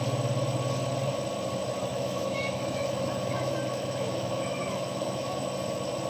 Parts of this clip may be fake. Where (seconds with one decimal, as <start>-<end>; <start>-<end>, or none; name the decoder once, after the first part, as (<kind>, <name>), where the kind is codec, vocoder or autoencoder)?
1.9-5.5 (autoencoder, DAC-VAE)